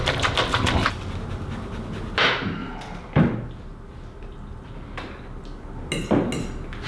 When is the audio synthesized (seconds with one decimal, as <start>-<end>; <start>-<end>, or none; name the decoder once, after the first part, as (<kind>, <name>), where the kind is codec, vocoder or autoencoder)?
2.6-3.2 (vocoder, BigVGAN v2)